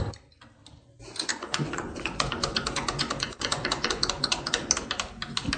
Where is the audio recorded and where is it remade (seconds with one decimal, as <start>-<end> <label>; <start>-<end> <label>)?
0.0-1.3 recorded; 1.3-4.7 remade; 4.7-5.6 recorded